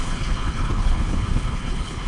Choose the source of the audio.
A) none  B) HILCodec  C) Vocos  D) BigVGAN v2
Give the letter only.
B